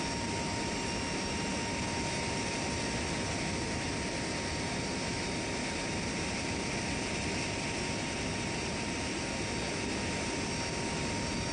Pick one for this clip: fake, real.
real